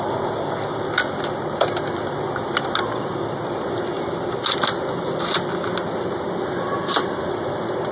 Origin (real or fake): real